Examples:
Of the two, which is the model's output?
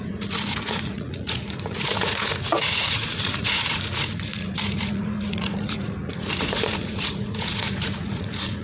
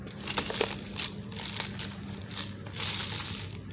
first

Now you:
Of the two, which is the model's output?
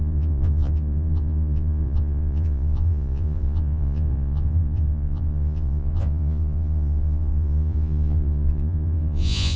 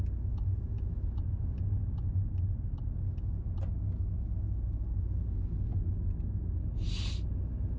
first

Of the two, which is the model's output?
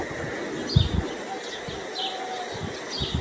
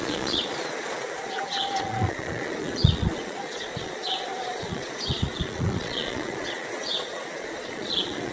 second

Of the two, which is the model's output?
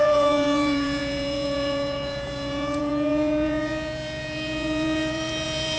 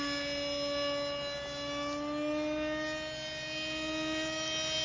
first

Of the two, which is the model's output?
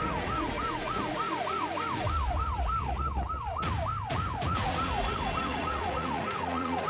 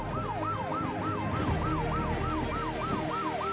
first